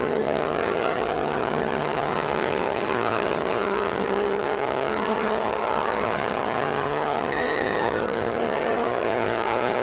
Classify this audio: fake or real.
fake